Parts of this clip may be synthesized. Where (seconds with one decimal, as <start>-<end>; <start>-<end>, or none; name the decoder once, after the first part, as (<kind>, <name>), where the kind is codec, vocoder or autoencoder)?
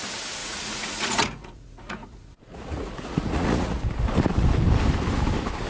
0.4-3.8 (vocoder, Vocos)